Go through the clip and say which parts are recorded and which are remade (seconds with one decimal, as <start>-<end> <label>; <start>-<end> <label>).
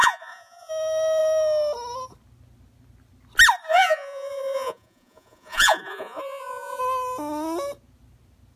0.0-0.7 remade; 0.7-3.7 recorded; 3.7-6.8 remade; 6.8-8.6 recorded